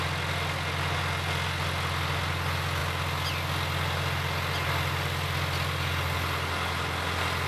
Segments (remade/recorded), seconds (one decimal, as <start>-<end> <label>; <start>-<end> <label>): 0.0-7.5 recorded